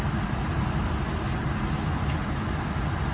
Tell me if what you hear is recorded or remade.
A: recorded